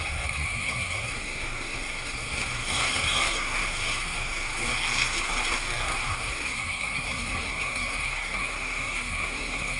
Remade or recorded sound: remade